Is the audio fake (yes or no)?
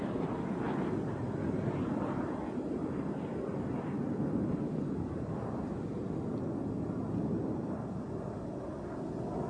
no